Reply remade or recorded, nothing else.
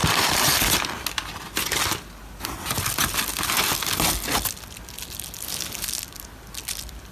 recorded